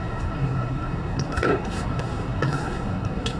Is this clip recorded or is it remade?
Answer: remade